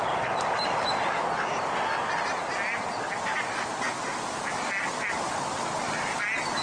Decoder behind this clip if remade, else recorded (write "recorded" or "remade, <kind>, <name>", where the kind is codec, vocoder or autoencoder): recorded